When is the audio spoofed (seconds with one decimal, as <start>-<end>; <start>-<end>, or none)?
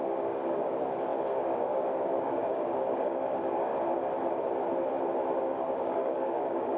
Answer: 0.0-3.7; 5.4-6.8